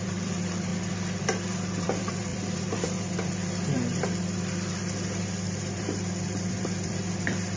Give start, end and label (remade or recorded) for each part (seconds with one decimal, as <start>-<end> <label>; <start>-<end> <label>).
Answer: 0.0-0.7 remade; 0.7-1.2 recorded; 1.2-7.6 remade

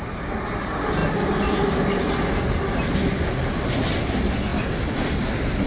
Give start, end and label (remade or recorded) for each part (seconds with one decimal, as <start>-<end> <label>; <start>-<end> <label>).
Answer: 0.0-5.7 recorded

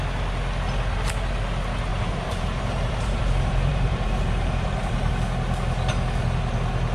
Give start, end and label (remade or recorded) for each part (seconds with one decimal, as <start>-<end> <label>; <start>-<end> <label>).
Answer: 0.0-1.9 recorded; 1.9-5.1 remade; 5.1-6.9 recorded

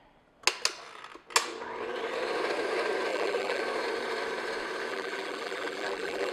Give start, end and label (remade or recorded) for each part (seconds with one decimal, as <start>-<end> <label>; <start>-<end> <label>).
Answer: 0.0-3.1 recorded; 3.1-3.6 remade; 3.6-4.9 recorded; 4.9-6.3 remade

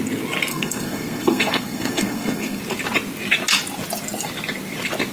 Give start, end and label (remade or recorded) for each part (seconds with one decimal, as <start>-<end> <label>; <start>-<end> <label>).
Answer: 0.0-0.5 recorded; 0.5-2.6 remade; 2.6-5.1 recorded